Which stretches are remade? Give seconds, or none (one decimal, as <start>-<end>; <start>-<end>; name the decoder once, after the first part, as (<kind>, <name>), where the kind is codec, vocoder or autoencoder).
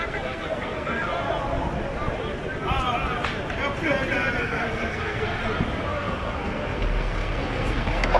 0.0-1.1 (codec, SNAC); 4.4-5.4; 5.9-8.2